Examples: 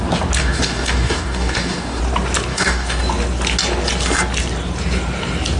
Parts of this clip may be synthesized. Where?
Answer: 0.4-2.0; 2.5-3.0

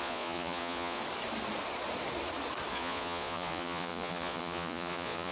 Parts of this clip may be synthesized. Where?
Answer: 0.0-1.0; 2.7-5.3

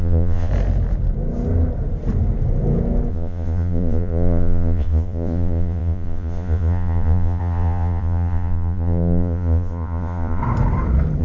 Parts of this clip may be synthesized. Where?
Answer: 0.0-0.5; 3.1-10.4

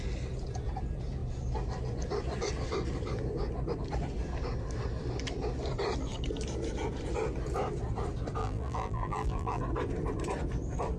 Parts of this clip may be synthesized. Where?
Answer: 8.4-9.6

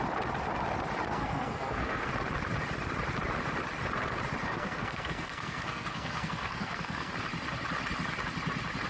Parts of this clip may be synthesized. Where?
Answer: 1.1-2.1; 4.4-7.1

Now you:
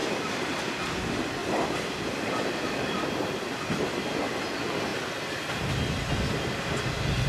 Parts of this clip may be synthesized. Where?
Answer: 0.0-0.6; 1.4-4.1

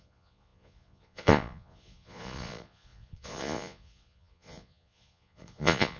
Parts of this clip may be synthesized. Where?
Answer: 0.0-6.0